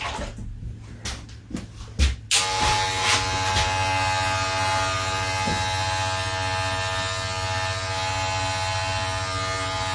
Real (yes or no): yes